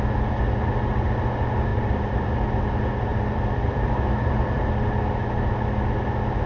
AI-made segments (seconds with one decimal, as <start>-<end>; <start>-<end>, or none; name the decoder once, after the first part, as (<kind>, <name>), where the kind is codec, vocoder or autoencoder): 1.7-2.7 (vocoder, BigVGAN v2); 3.1-4.6